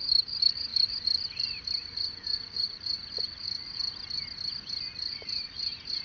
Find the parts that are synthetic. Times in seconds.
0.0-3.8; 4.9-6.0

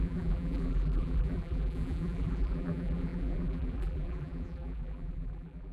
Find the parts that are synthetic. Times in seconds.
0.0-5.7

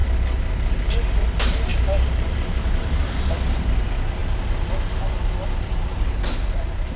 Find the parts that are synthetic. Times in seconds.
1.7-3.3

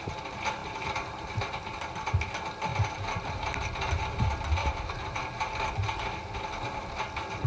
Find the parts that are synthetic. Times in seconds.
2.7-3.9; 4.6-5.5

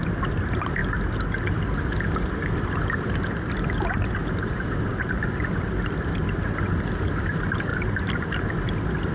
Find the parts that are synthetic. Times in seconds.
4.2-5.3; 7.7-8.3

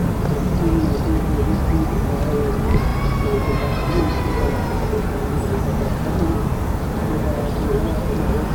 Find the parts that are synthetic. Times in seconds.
none

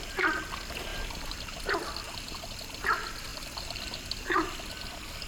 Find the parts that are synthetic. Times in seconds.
0.9-1.6; 3.3-3.8

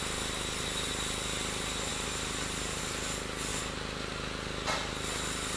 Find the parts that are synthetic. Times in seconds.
1.9-2.8